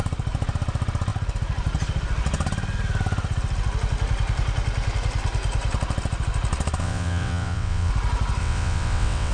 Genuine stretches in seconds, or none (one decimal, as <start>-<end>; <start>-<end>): 0.0-6.8; 7.9-8.4